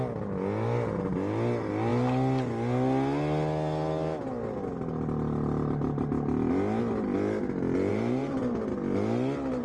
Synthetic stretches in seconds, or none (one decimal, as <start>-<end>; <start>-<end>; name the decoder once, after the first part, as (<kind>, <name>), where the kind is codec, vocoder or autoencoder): 7.9-8.4 (vocoder, BigVGAN v2)